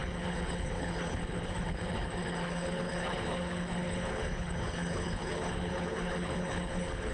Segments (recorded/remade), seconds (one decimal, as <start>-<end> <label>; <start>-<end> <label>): 0.0-7.1 remade